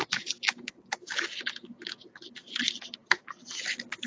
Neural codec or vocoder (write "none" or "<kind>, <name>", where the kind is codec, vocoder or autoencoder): none